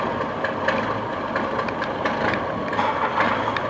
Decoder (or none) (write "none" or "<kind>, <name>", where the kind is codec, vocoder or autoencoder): none